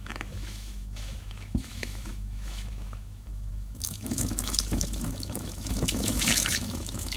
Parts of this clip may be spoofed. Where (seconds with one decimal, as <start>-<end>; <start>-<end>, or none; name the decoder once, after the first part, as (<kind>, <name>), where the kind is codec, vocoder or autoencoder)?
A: 0.0-7.2 (autoencoder, DAC-VAE)